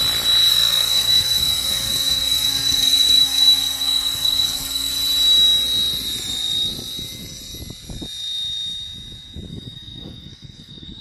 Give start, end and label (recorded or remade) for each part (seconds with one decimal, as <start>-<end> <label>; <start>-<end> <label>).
0.0-0.5 recorded; 0.5-4.9 remade; 4.9-9.5 recorded; 9.5-11.0 remade